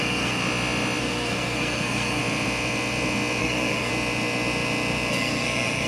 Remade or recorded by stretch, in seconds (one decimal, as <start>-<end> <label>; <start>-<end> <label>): 0.0-0.4 remade; 0.4-1.0 recorded; 1.0-2.2 remade; 2.2-3.4 recorded; 3.4-3.9 remade; 3.9-5.1 recorded; 5.1-5.9 remade

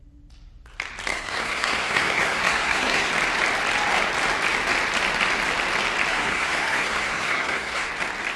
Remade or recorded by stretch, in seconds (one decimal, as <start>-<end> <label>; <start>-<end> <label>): 0.0-1.1 recorded; 1.1-3.1 remade; 3.1-6.1 recorded; 6.1-7.9 remade; 7.9-8.4 recorded